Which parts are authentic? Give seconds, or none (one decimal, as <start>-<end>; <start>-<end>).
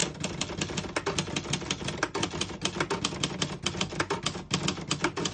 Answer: 0.0-5.3